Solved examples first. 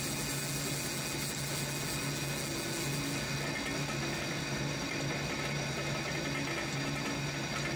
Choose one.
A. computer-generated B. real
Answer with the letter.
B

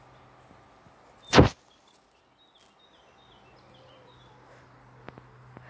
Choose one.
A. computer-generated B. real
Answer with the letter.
B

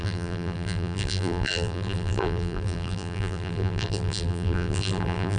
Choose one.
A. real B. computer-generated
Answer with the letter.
B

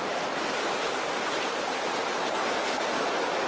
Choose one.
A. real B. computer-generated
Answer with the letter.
A